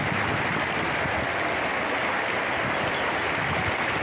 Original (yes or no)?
yes